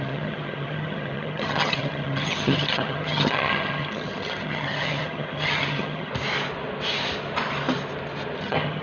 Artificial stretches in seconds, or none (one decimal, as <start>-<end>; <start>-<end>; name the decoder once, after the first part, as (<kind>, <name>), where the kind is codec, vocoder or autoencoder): 0.0-6.1 (vocoder, HiFi-GAN); 8.4-8.8